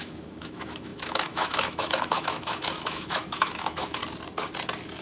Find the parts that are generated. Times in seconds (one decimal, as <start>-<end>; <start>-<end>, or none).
0.0-4.0